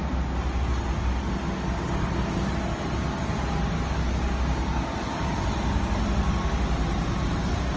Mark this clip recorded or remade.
recorded